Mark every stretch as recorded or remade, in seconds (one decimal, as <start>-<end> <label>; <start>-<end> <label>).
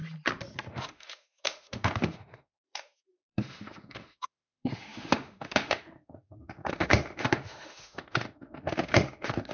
0.0-0.7 recorded; 0.7-9.5 remade